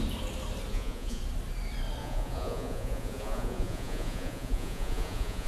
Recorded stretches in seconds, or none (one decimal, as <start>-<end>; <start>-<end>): 0.0-0.7; 1.2-2.0